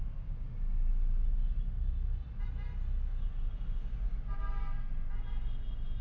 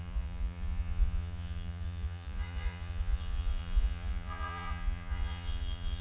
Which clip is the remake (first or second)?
second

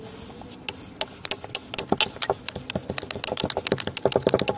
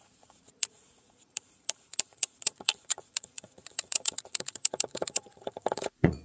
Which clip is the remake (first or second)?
second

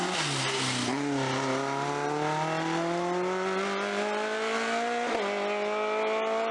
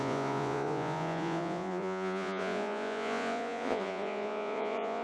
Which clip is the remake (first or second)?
second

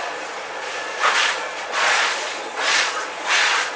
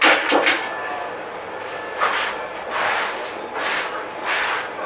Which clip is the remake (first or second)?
first